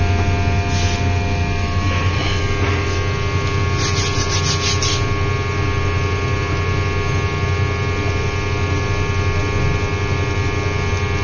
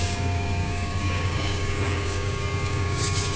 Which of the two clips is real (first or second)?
first